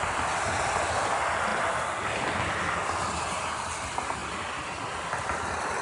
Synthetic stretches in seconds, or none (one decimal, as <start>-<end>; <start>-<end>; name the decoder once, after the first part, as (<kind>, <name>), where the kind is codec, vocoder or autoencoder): none